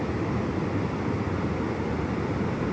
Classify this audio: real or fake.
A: real